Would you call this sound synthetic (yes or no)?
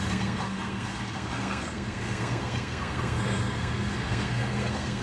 yes